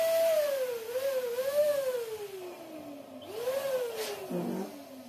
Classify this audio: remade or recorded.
recorded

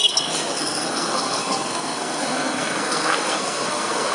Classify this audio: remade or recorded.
remade